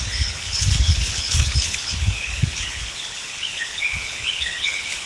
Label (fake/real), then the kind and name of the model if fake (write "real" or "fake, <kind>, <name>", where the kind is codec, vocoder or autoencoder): fake, codec, HILCodec